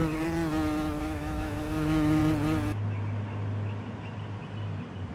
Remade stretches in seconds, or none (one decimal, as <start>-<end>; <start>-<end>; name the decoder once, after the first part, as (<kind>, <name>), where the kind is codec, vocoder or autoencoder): 1.0-2.2 (autoencoder, DAC-VAE)